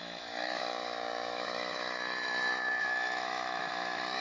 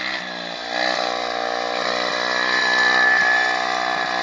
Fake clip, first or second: first